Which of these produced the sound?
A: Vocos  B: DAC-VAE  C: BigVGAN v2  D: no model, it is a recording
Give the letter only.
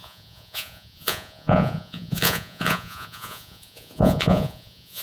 A